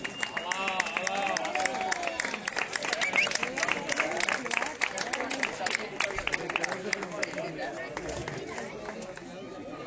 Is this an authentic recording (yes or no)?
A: yes